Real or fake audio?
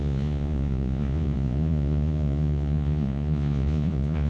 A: fake